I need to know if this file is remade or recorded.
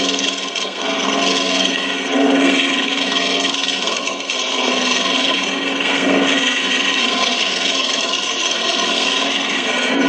remade